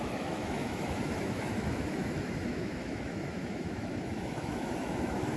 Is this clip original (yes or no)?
no